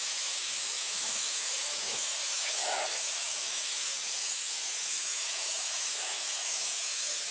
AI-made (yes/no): yes